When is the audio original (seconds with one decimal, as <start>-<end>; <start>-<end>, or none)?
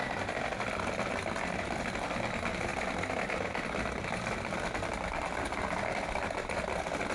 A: 0.0-7.1